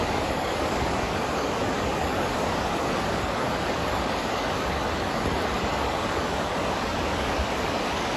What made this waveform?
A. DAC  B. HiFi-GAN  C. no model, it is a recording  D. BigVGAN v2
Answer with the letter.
A